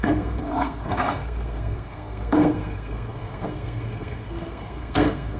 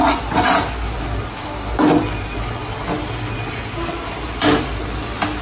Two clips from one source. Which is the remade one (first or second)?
first